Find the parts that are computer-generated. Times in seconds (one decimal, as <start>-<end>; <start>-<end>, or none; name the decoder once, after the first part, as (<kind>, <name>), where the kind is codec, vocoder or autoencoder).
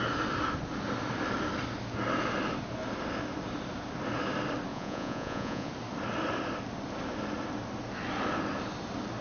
4.7-5.7 (vocoder, Vocos)